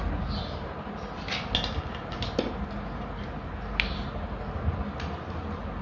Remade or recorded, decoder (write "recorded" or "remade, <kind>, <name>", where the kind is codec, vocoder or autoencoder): recorded